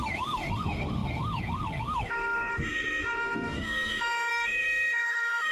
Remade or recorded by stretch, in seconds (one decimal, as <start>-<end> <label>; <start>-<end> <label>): 0.0-5.5 remade